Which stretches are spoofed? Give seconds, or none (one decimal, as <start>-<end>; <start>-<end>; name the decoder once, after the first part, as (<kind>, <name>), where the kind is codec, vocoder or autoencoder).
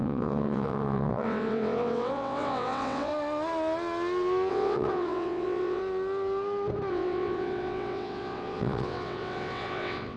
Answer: 0.0-3.1 (vocoder, WaveNeXt); 4.5-5.8; 6.9-10.2